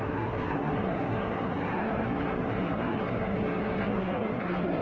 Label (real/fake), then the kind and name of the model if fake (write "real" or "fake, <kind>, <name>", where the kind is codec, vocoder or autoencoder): fake, codec, SNAC